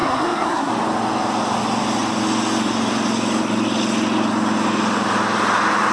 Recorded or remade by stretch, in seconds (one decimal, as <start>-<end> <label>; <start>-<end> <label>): 0.0-0.7 remade; 0.7-5.9 recorded